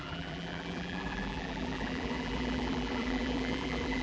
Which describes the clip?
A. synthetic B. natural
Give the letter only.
A